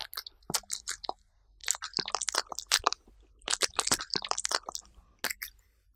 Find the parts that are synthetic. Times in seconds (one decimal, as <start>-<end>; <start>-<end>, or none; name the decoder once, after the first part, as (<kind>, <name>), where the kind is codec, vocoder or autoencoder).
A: 1.6-5.2 (vocoder, BigVGAN v2)